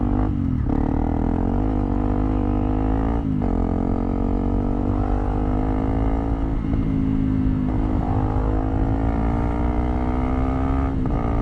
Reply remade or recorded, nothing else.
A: recorded